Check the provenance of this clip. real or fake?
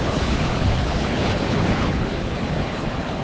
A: fake